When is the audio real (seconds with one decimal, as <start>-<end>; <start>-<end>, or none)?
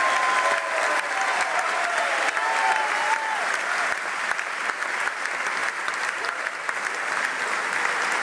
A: 0.0-5.6; 7.0-8.2